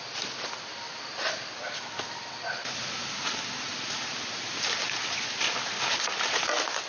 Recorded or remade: recorded